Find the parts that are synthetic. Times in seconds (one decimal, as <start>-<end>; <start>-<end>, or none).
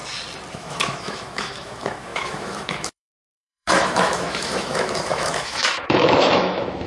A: 0.5-6.9